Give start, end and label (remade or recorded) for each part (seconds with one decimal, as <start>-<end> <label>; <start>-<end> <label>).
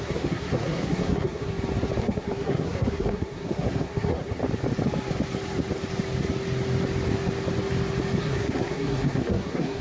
0.0-1.5 remade; 1.5-2.0 recorded; 2.0-4.4 remade; 4.4-8.2 recorded; 8.2-9.8 remade